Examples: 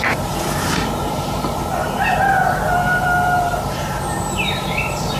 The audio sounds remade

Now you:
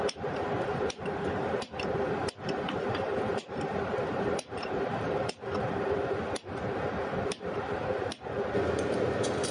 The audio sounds remade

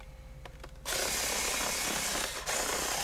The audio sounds recorded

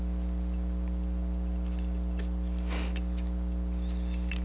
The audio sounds recorded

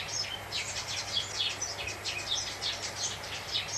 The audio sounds recorded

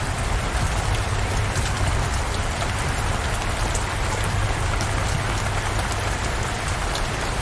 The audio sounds recorded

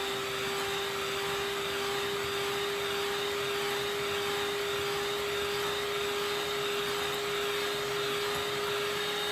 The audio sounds recorded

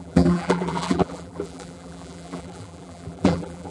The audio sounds remade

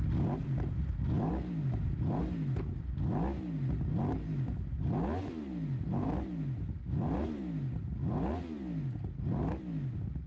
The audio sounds recorded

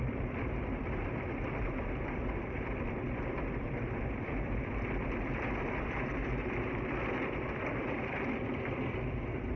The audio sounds remade